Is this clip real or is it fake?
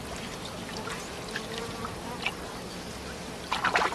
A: real